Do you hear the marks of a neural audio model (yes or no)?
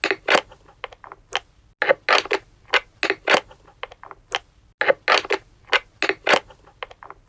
no